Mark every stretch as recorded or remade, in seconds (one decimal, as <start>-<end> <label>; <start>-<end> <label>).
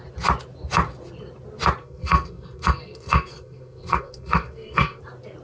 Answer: 0.0-1.8 recorded; 1.8-5.0 remade; 5.0-5.4 recorded